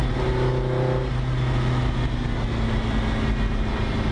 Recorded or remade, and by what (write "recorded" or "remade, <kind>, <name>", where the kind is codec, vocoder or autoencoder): recorded